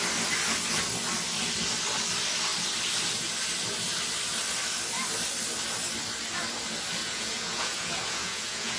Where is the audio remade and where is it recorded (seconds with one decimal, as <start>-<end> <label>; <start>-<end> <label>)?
0.0-7.0 recorded; 7.0-8.8 remade